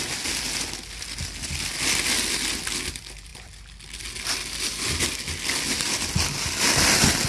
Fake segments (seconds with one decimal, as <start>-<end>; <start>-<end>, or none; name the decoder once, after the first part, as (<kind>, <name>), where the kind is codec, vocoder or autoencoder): none